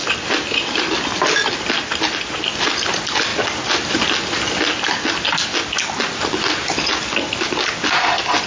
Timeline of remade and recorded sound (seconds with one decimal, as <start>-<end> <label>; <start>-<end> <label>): 0.0-8.5 recorded